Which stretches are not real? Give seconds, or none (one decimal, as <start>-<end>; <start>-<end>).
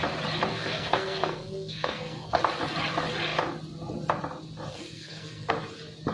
0.5-2.4; 4.7-5.5